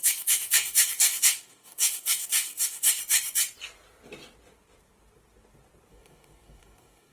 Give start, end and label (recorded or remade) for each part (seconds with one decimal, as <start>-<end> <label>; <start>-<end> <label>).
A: 0.0-3.0 remade; 3.0-5.9 recorded; 5.9-7.1 remade